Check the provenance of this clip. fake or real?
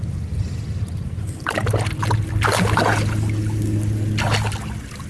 real